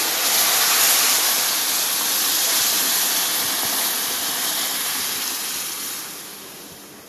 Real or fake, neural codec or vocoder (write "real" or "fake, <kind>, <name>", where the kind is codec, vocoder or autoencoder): real